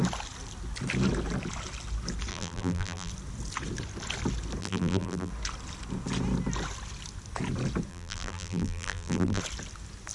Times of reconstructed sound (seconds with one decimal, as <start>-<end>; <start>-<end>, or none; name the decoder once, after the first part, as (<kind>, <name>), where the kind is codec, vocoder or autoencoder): 2.3-3.1 (vocoder, BigVGAN v2); 4.6-5.3; 7.9-9.4